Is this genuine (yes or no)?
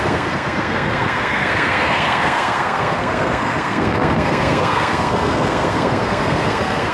no